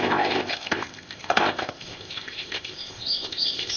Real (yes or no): no